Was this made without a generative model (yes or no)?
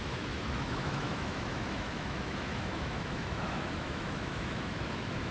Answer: no